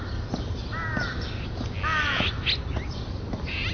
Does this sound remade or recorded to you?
recorded